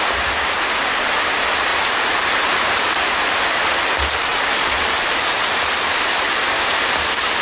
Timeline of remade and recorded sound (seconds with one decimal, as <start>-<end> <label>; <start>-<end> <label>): 0.0-1.7 recorded; 1.7-3.2 remade; 3.2-4.3 recorded; 4.3-5.9 remade; 5.9-7.4 recorded